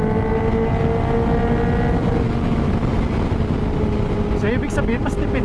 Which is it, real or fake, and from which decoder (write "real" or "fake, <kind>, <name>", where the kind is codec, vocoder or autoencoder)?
real